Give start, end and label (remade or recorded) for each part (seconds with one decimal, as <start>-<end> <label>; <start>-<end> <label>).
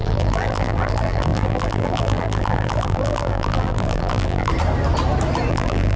0.0-4.5 remade; 4.5-5.5 recorded; 5.5-6.0 remade